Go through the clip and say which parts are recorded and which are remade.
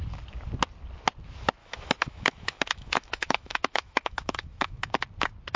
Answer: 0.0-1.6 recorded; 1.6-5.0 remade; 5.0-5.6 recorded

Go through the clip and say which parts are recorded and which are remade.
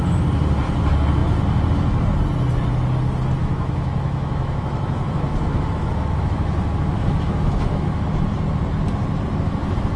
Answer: 0.0-3.4 recorded; 3.4-8.0 remade; 8.0-10.0 recorded